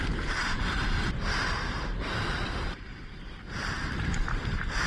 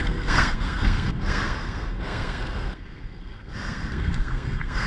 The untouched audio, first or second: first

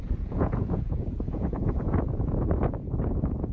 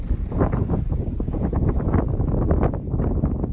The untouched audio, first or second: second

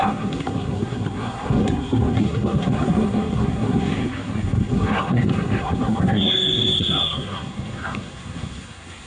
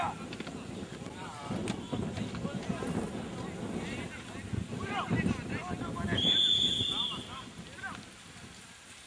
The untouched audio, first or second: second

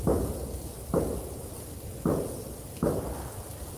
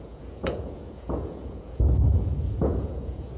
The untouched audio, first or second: first